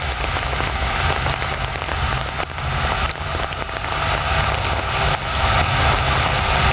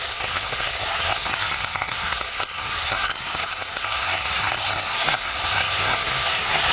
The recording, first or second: first